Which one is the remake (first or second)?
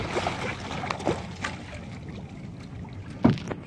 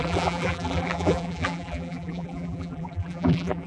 second